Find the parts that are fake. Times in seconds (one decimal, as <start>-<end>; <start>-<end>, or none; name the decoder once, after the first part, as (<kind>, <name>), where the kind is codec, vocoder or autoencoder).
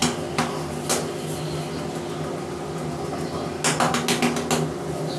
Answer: none